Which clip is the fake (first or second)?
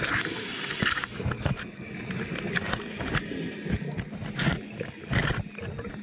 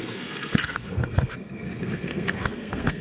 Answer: second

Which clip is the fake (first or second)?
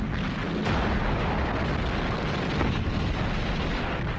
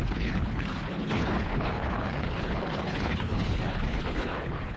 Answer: second